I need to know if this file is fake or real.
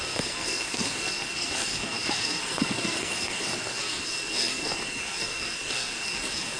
fake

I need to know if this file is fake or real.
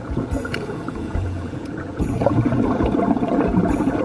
fake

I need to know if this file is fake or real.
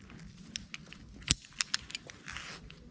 real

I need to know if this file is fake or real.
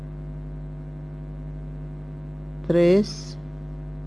real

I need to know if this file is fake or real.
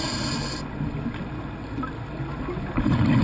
real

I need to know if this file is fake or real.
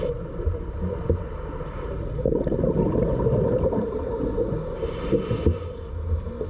real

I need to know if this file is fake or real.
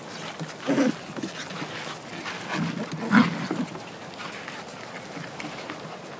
real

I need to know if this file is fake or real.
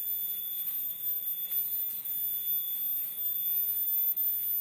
real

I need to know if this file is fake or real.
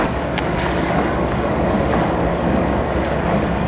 fake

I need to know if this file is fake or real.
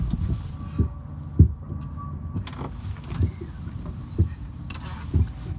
real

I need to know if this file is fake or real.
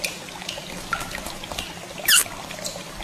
real